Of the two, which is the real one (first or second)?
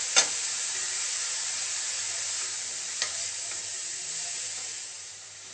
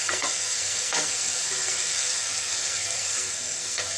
first